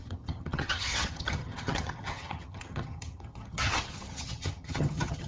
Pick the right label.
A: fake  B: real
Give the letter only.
A